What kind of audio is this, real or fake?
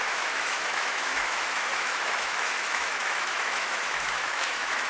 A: fake